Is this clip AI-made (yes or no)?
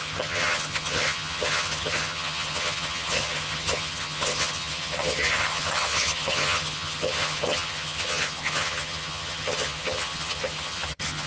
yes